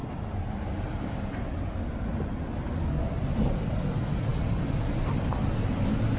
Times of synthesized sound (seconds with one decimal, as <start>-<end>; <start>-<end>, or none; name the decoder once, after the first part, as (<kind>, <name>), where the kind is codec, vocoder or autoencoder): none